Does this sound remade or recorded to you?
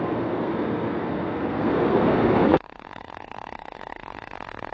remade